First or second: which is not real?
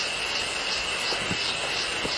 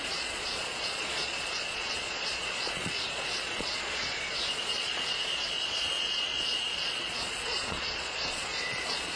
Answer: second